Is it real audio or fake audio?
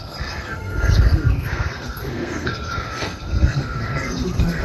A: fake